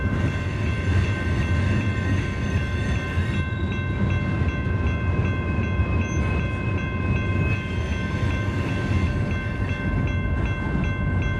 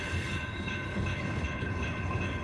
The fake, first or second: second